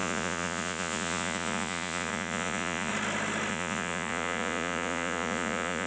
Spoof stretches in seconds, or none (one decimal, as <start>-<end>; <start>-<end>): 0.0-2.9; 3.5-5.9